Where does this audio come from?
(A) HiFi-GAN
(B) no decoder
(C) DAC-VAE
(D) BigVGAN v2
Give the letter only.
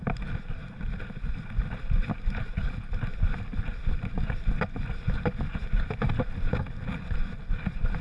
B